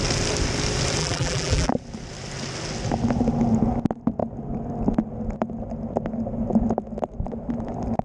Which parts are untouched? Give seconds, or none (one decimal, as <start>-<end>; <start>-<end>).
0.0-1.0; 1.7-8.0